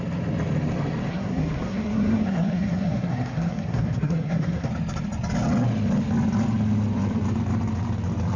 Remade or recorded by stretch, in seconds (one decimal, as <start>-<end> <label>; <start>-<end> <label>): 0.0-1.1 recorded; 1.1-4.7 remade; 4.7-8.4 recorded